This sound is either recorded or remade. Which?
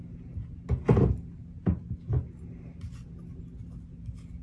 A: recorded